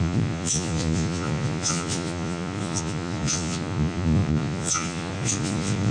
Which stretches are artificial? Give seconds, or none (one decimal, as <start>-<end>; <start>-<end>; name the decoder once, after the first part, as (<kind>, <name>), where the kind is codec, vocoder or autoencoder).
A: 0.0-5.9 (vocoder, Vocos)